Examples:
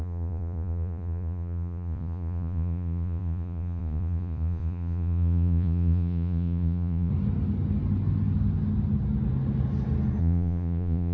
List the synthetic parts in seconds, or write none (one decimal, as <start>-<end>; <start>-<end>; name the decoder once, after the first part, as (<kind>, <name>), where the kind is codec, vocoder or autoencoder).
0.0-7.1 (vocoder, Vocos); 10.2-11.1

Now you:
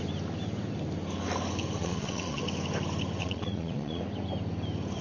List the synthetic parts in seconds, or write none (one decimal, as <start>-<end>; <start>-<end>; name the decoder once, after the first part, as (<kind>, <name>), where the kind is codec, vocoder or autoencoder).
1.8-2.4 (vocoder, Vocos); 3.2-4.0

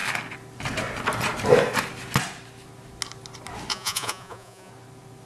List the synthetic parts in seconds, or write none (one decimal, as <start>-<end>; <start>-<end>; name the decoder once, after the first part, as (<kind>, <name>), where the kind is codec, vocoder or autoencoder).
3.7-4.7 (vocoder, Vocos)

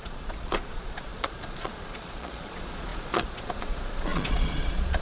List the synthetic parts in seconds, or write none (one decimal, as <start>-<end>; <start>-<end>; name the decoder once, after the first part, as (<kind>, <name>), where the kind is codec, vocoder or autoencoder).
0.0-5.0 (vocoder, Vocos)

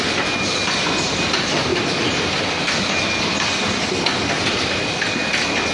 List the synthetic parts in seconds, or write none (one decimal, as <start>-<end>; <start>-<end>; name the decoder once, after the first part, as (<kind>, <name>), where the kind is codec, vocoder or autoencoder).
none

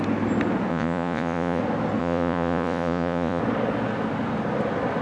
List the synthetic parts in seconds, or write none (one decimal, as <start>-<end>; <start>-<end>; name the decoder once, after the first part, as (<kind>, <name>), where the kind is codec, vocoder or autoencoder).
0.7-1.6 (vocoder, Vocos); 2.0-3.4

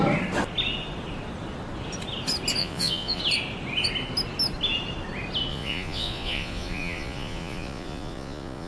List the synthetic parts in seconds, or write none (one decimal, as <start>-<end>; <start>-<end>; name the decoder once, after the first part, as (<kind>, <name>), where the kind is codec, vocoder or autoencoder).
2.6-3.2 (vocoder, Vocos); 5.5-8.7

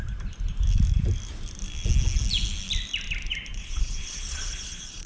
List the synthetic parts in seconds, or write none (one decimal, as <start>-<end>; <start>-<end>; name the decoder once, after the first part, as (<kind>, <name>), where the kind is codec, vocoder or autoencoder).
3.5-5.1 (vocoder, Vocos)